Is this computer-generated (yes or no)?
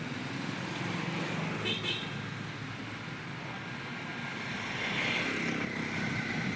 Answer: no